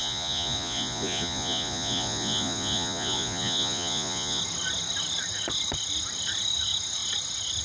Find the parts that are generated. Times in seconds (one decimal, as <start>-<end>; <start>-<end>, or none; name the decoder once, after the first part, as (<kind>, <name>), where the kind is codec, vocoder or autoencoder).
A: 0.0-4.4 (vocoder, Vocos)